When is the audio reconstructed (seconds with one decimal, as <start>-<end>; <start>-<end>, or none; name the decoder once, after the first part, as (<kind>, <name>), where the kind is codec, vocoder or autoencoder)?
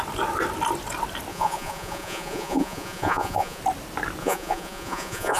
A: 1.3-3.6 (vocoder, Vocos); 4.2-5.4